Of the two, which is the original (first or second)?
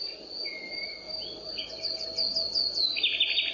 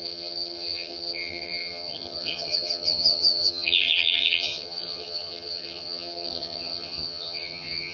first